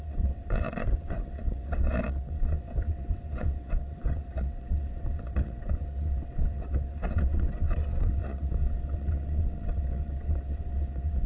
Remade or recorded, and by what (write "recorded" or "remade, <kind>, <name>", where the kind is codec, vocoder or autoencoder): remade, vocoder, WaveNeXt